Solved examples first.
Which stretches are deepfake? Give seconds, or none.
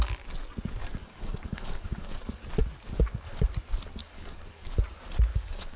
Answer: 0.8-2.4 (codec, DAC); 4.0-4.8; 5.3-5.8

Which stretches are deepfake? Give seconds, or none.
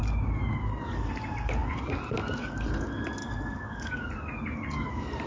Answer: 3.2-4.1 (codec, DAC)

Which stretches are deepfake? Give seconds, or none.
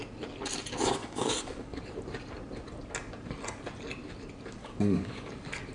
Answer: 1.0-1.8 (codec, DAC); 4.6-5.3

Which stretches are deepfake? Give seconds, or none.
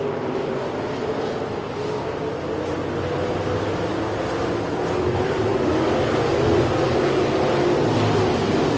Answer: none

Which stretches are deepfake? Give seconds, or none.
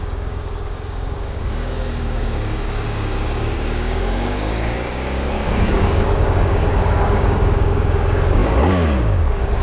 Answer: 0.0-9.6 (codec, DAC)